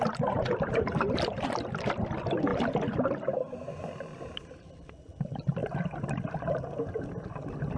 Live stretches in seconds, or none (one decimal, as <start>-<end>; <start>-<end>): 2.5-3.8